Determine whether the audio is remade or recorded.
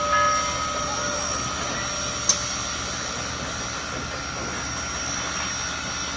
recorded